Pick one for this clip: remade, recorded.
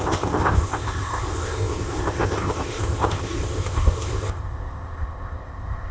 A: remade